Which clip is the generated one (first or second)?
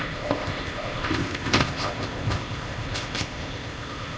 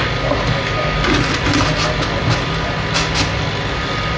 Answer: first